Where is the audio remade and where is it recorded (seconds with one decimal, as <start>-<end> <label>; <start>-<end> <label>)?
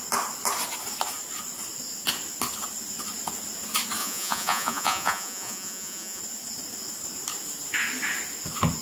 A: 0.0-4.0 recorded; 4.0-6.2 remade; 6.2-8.8 recorded